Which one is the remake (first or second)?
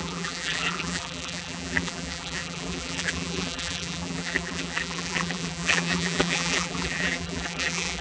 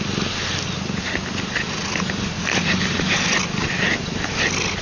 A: first